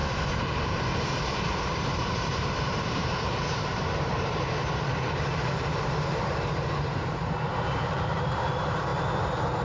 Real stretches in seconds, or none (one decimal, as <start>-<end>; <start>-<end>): 8.9-9.6